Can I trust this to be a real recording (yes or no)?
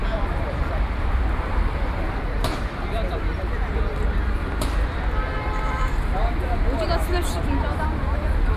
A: no